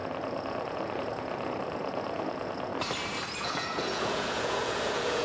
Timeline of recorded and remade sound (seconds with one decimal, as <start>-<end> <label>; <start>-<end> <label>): 0.0-2.7 remade; 2.7-3.4 recorded; 3.4-5.2 remade